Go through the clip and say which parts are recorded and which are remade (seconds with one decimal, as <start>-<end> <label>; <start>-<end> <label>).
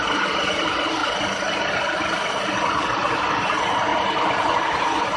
0.0-5.2 recorded